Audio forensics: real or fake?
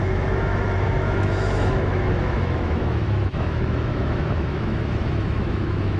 fake